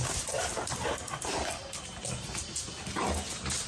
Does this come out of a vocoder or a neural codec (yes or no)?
no